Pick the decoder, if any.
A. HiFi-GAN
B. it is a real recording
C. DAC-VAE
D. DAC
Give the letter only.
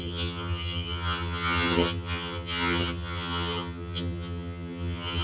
A